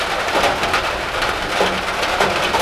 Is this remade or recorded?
recorded